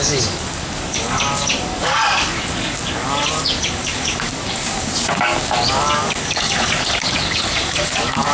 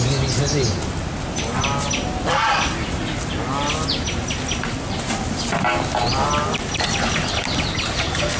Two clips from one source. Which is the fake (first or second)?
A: first